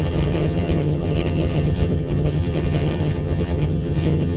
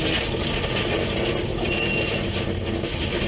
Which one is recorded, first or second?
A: second